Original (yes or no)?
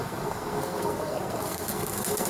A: no